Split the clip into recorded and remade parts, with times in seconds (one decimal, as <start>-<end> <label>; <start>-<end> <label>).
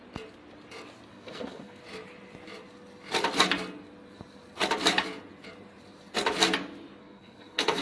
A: 0.0-1.1 recorded; 1.1-1.8 remade; 1.8-7.0 recorded; 7.0-7.8 remade